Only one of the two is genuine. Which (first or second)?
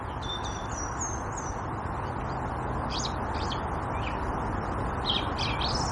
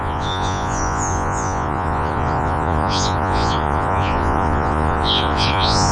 first